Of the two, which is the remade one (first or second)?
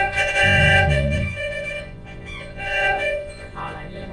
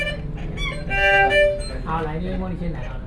first